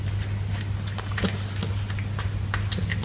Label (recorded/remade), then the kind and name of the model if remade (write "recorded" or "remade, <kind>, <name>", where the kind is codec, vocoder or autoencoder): recorded